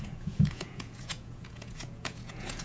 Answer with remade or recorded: remade